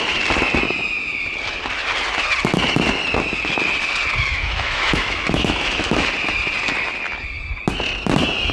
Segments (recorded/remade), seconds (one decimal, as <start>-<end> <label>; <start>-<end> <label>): 0.0-4.3 recorded; 4.3-6.1 remade; 6.1-8.5 recorded